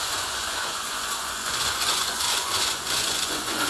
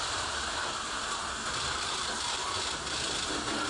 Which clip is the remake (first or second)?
first